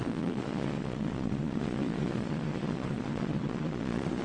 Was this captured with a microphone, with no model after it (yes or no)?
no